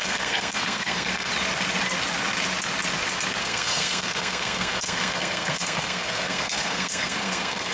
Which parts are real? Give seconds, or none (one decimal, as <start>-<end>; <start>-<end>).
1.3-3.4

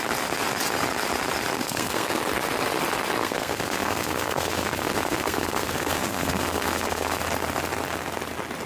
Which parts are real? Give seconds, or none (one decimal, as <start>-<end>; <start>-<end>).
0.0-1.6; 2.2-3.2; 7.2-8.7

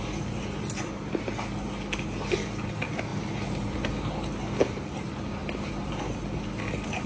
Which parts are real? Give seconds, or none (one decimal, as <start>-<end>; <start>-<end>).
0.0-7.1

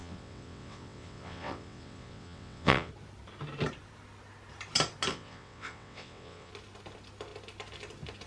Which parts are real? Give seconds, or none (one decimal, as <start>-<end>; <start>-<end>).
2.9-5.1; 6.5-8.3

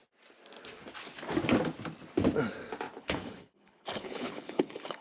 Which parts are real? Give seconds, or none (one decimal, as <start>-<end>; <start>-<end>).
0.0-3.0

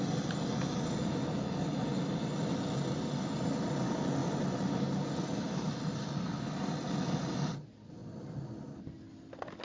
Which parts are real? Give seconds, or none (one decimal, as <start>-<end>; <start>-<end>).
0.0-9.6